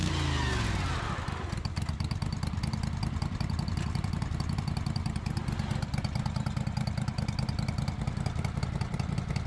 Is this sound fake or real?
real